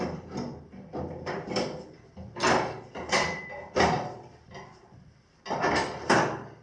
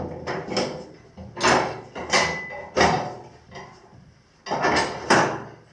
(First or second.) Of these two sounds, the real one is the second